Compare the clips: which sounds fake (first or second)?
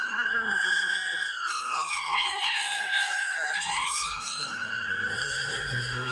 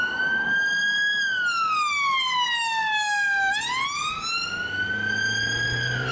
first